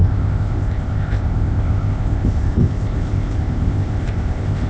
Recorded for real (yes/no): no